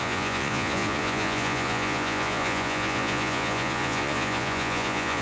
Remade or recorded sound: remade